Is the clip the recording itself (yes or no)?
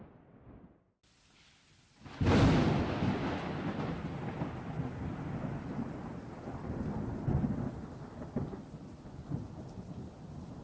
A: yes